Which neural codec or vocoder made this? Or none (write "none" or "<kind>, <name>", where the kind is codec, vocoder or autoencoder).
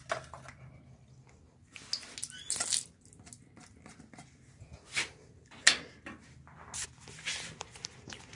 none